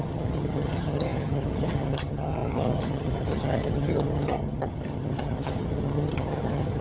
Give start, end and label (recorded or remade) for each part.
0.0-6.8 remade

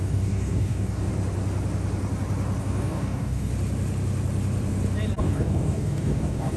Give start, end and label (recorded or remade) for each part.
0.0-1.1 remade; 1.1-2.6 recorded; 2.6-3.5 remade; 3.5-5.2 recorded; 5.2-6.6 remade

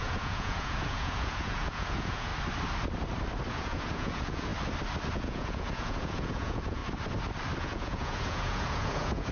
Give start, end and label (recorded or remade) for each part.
0.0-2.3 remade; 2.3-3.5 recorded; 3.5-4.5 remade; 4.5-5.1 recorded; 5.1-6.8 remade; 6.8-7.6 recorded; 7.6-9.3 remade